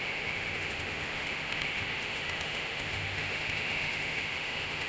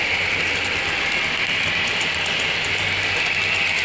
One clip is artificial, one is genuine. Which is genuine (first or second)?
second